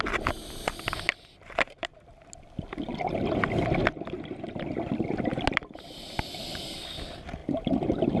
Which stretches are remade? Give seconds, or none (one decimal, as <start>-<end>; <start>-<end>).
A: none